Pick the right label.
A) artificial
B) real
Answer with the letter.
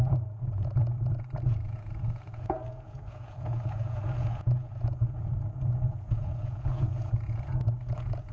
A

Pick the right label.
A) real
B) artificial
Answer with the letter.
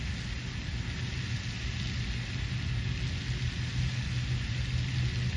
A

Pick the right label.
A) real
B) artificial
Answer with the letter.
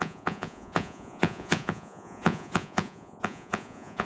B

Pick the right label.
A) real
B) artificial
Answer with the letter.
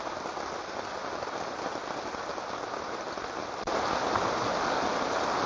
A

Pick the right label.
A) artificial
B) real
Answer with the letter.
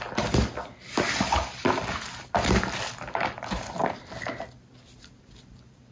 B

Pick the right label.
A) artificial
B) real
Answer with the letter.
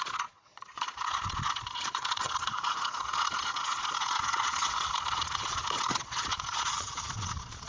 A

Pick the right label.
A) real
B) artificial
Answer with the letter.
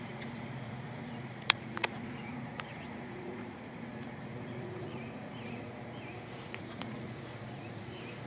B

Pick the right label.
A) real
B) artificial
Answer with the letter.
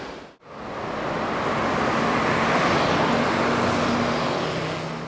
A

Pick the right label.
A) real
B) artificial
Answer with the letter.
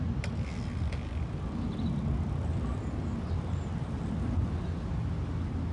A